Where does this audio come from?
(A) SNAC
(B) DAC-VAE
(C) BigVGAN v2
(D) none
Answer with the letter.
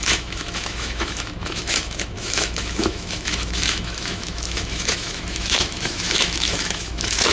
B